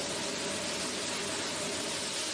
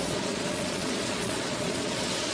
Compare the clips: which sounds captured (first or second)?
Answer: first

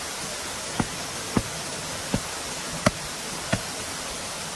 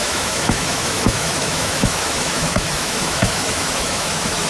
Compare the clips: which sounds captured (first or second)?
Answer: first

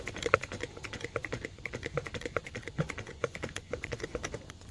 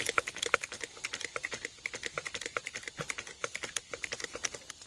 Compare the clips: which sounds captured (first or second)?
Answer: second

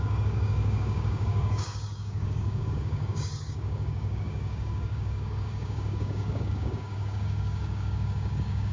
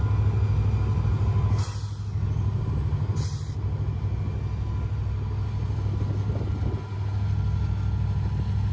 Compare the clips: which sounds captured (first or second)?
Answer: second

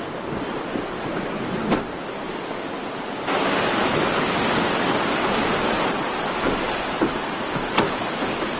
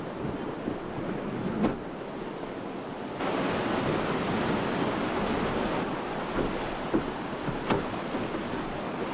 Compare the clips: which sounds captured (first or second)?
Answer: second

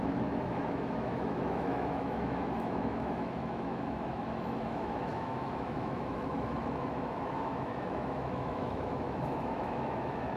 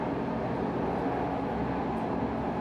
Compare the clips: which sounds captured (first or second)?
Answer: second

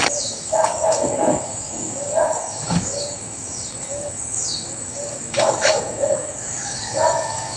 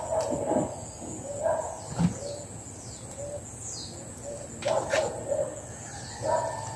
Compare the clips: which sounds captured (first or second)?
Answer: second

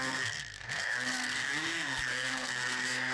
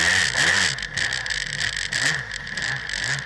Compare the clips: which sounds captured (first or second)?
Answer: second